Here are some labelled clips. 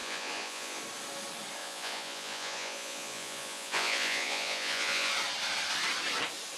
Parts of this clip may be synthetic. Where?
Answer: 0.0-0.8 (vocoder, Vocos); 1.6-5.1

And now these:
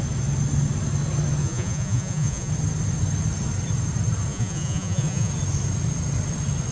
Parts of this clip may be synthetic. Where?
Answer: 1.4-2.5 (vocoder, Vocos); 4.3-5.3

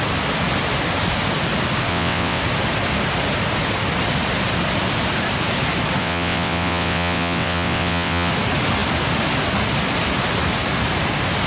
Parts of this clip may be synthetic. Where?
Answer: 1.9-2.4 (vocoder, WaveNeXt); 6.0-8.3

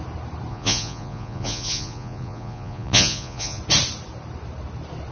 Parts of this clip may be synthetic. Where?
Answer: 0.5-3.6 (vocoder, Vocos)